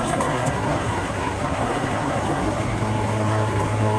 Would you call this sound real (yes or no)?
no